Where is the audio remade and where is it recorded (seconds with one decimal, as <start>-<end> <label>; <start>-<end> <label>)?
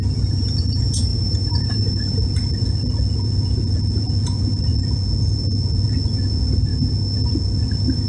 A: 0.0-6.7 remade; 6.7-7.3 recorded; 7.3-8.1 remade